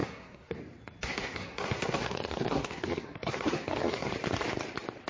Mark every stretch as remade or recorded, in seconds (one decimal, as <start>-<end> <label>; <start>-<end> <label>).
0.0-0.6 remade; 0.6-1.0 recorded; 1.0-4.1 remade; 4.1-5.1 recorded